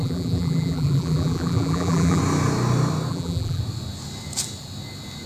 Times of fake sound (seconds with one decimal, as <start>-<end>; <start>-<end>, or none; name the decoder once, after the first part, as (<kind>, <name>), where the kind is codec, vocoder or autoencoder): 0.0-2.2 (vocoder, BigVGAN v2); 3.1-3.6